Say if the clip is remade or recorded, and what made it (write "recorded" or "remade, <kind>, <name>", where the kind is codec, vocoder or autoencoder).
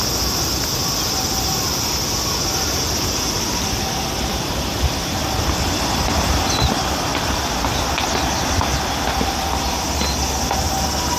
recorded